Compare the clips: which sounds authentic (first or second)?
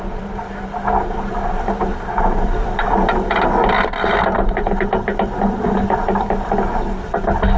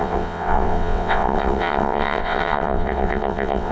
first